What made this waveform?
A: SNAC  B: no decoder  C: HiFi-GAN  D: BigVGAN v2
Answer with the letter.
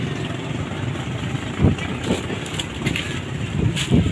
B